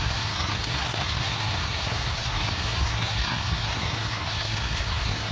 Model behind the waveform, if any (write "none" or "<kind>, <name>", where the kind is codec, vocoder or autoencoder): codec, SNAC